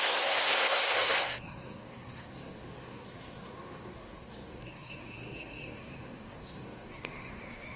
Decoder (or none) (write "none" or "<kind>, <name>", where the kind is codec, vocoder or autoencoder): codec, SNAC